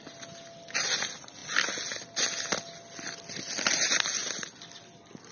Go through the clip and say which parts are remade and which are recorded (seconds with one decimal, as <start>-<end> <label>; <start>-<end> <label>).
0.0-5.3 recorded